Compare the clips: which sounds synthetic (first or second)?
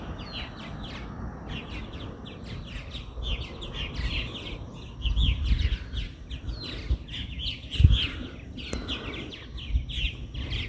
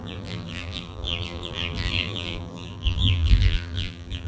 second